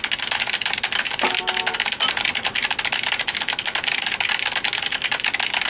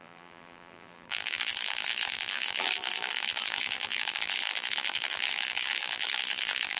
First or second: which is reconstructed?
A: second